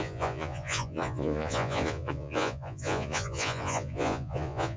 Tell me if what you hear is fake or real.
fake